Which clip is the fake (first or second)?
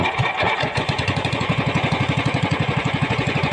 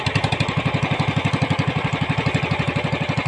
first